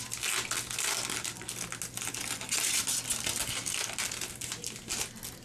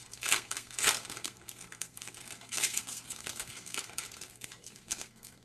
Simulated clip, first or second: second